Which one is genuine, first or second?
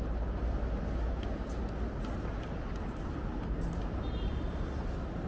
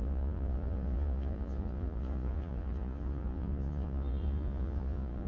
first